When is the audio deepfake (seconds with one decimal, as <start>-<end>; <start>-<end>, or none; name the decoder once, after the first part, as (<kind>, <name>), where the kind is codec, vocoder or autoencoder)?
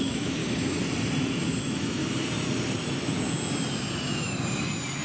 0.0-0.4 (autoencoder, DAC-VAE); 1.6-2.0